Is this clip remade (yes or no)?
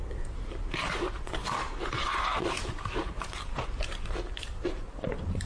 yes